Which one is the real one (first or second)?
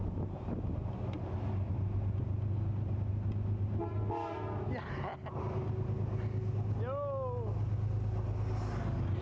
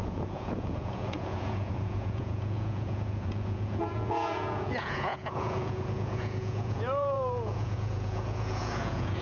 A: first